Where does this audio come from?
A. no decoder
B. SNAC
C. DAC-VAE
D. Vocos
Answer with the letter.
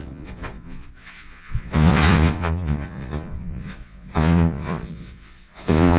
D